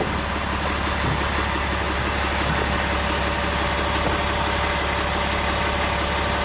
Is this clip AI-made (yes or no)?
no